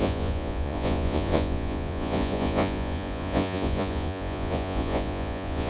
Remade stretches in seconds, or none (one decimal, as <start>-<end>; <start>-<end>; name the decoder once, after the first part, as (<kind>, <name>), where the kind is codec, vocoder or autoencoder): 0.0-5.7 (vocoder, Vocos)